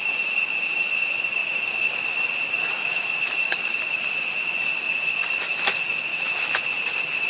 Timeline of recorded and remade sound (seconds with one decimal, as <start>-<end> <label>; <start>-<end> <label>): 0.0-6.1 recorded; 6.1-6.6 remade; 6.6-7.3 recorded